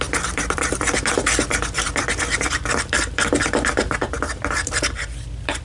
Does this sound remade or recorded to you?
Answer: remade